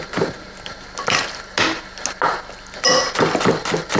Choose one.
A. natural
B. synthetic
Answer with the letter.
A